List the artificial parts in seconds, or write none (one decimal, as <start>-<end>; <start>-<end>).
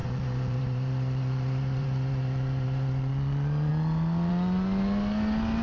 0.0-3.1